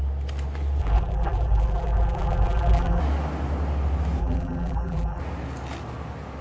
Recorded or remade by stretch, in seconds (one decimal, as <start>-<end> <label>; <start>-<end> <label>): 0.0-0.8 recorded; 0.8-3.0 remade; 3.0-4.2 recorded; 4.2-5.2 remade; 5.2-6.4 recorded